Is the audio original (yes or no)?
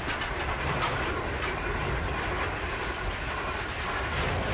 yes